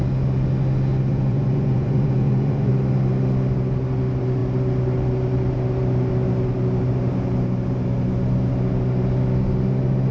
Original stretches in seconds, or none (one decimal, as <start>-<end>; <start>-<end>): 0.0-1.1; 2.7-10.1